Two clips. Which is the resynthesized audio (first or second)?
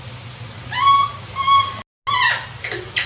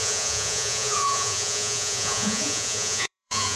second